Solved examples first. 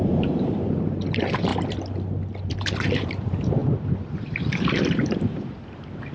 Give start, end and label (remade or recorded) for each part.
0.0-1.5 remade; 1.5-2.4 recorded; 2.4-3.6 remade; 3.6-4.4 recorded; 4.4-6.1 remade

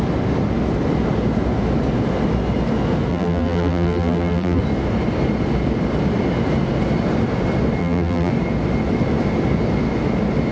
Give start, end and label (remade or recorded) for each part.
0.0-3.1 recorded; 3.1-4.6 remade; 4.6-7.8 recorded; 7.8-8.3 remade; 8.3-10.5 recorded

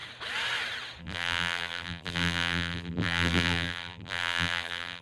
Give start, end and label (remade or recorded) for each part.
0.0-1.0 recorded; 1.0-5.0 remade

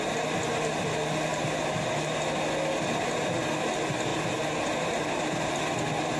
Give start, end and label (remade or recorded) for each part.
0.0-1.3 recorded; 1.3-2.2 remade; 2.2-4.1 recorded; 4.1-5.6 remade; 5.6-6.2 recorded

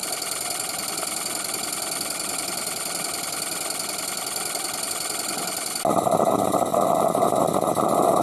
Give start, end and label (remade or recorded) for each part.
0.0-6.7 recorded; 6.7-7.4 remade; 7.4-8.2 recorded

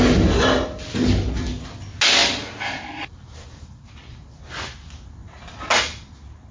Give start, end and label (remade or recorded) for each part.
0.0-2.2 recorded; 2.2-4.5 remade; 4.5-6.5 recorded

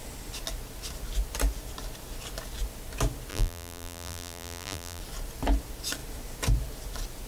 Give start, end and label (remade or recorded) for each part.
0.0-3.3 recorded; 3.3-5.0 remade; 5.0-7.3 recorded